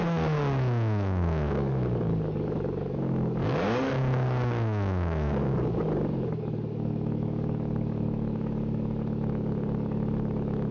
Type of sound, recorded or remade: remade